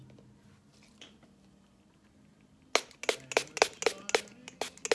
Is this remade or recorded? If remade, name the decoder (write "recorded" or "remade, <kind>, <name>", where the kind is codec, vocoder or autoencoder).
recorded